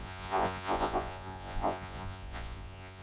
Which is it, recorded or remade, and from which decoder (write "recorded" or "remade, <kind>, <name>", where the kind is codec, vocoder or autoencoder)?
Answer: remade, vocoder, Vocos